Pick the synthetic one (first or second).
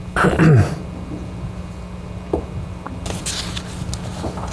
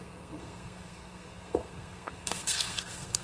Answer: second